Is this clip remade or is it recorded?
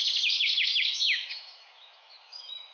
remade